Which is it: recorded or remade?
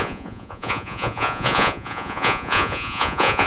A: remade